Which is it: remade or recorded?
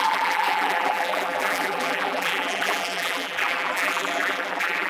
remade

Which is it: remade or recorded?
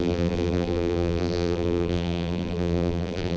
remade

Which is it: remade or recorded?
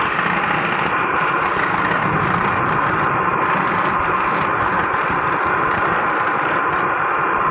recorded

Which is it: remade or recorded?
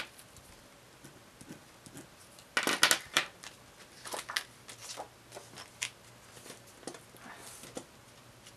recorded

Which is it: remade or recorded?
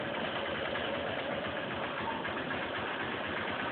recorded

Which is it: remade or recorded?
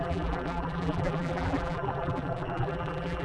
remade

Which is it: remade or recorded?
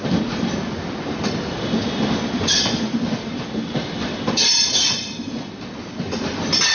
recorded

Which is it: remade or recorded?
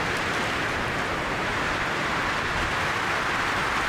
recorded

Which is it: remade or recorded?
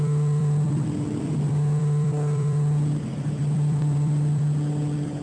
remade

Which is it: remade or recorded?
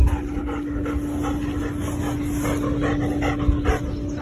recorded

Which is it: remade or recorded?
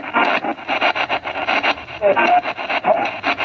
recorded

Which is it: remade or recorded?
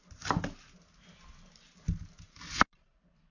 recorded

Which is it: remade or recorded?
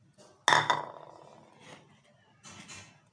recorded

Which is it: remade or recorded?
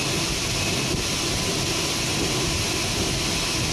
recorded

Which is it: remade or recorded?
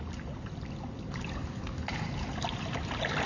recorded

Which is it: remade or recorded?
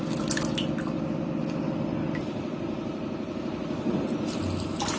recorded